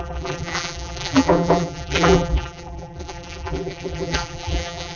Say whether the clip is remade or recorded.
remade